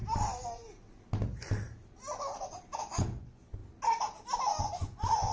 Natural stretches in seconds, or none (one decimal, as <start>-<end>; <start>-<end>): 0.0-2.8; 3.6-4.6